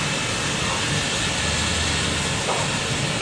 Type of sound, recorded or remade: recorded